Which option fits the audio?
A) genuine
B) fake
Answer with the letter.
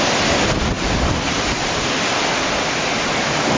A